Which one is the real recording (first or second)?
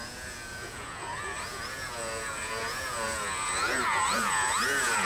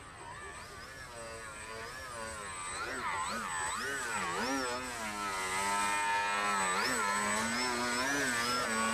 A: second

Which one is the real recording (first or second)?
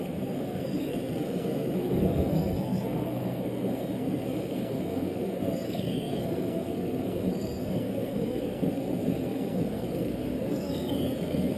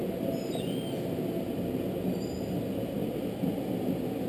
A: second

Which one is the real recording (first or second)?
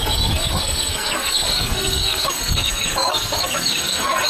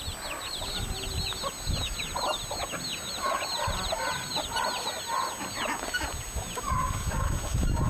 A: second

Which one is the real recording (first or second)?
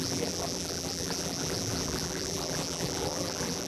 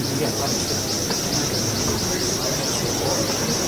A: second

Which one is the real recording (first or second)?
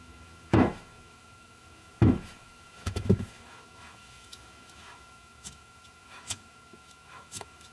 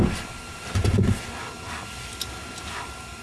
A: second